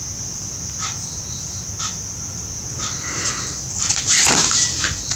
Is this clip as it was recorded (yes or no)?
yes